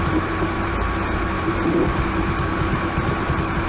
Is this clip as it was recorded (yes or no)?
no